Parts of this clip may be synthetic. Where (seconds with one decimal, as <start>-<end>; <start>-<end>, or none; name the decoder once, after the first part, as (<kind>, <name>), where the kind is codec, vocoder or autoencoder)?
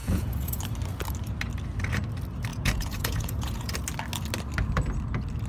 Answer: 0.0-0.6 (vocoder, Vocos); 2.5-3.7